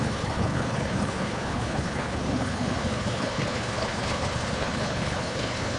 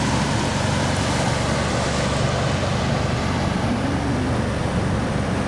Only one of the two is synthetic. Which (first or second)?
first